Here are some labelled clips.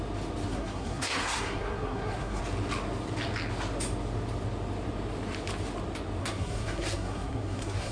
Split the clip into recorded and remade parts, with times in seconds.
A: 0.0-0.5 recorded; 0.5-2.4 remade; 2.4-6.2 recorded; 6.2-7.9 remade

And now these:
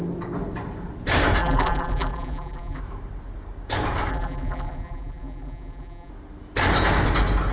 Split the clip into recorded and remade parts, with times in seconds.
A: 0.0-1.4 recorded; 1.4-2.8 remade; 2.8-4.1 recorded; 4.1-6.1 remade; 6.1-7.5 recorded

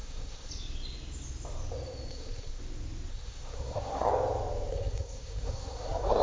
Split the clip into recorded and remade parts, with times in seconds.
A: 0.0-0.5 remade; 0.5-2.1 recorded; 2.1-2.6 remade; 2.6-3.1 recorded; 3.1-4.1 remade; 4.1-4.7 recorded; 4.7-6.2 remade

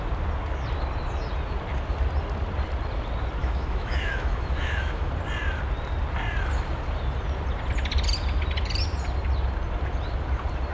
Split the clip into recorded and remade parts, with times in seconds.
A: 0.0-3.4 recorded; 3.4-5.1 remade; 5.1-10.7 recorded

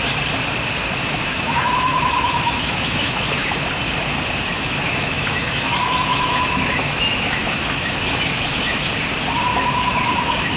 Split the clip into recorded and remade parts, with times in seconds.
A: 0.0-1.0 recorded; 1.0-3.7 remade; 3.7-4.5 recorded; 4.5-8.9 remade; 8.9-9.5 recorded; 9.5-10.6 remade

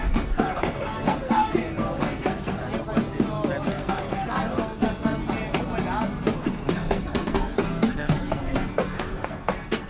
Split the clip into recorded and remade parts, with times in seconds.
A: 0.0-2.6 remade; 2.6-3.7 recorded; 3.7-5.2 remade; 5.2-6.4 recorded; 6.4-9.9 remade

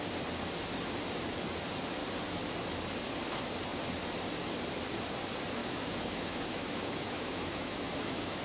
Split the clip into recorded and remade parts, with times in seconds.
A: 0.0-5.6 recorded; 5.6-8.4 remade